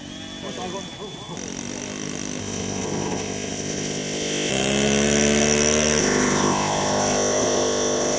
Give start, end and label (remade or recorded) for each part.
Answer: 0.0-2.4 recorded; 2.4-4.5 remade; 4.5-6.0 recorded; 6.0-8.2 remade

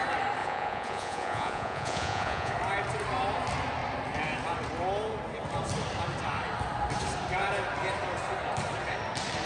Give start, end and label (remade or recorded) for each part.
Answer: 0.0-0.4 recorded; 0.4-2.5 remade; 2.5-9.5 recorded